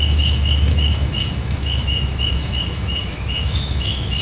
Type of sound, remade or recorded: remade